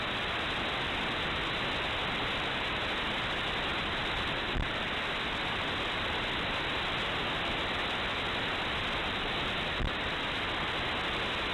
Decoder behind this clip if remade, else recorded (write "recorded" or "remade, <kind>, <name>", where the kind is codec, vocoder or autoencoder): recorded